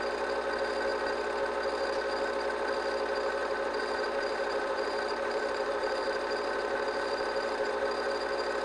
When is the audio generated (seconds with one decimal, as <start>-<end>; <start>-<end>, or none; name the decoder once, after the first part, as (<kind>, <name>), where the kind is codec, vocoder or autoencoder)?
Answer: 3.4-7.7 (vocoder, BigVGAN v2)

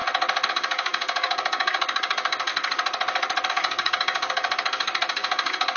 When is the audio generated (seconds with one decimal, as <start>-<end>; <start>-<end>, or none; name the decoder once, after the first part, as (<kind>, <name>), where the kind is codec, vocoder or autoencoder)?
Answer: 0.5-2.5 (codec, DAC); 3.5-5.8

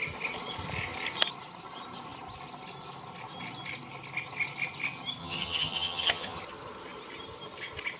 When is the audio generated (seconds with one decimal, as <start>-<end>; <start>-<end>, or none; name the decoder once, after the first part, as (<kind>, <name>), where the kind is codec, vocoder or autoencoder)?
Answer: 5.2-6.4 (vocoder, HiFi-GAN)

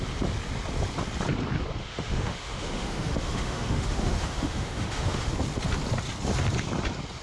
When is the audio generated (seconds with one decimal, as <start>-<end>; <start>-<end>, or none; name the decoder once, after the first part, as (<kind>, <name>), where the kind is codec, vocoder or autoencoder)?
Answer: 1.8-5.3 (autoencoder, DAC-VAE)

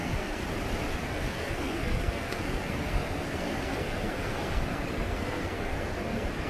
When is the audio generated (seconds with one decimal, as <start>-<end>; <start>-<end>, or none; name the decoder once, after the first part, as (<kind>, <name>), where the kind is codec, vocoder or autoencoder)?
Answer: 0.0-0.4 (codec, SNAC); 0.9-6.5

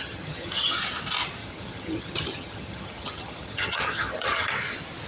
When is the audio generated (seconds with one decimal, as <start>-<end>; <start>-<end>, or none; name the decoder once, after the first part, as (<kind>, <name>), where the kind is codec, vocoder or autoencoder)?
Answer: 0.0-0.8 (vocoder, HiFi-GAN); 1.4-4.5

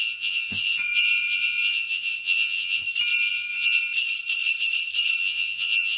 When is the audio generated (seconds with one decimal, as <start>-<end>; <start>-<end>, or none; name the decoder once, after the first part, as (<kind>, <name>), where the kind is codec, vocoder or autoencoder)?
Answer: 0.0-2.8 (vocoder, Vocos); 3.3-3.8; 5.2-6.0

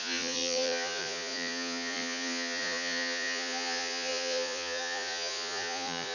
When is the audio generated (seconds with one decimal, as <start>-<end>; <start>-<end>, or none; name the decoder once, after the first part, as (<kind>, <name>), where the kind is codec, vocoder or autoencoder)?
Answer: 0.0-6.1 (vocoder, Vocos)